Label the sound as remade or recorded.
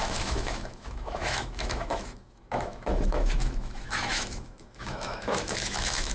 remade